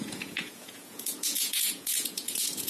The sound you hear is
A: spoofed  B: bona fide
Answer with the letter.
A